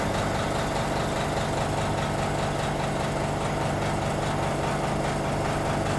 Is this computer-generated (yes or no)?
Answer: no